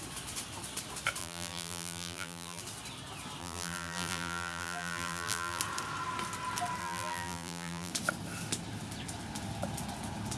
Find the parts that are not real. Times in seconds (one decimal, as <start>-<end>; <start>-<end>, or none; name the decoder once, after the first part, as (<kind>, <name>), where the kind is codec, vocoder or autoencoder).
1.2-2.6 (vocoder, BigVGAN v2); 3.4-5.6; 6.8-7.9